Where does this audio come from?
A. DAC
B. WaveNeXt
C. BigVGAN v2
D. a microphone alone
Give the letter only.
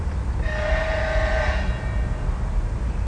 D